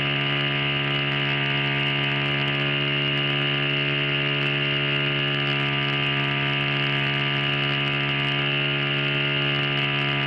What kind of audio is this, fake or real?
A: real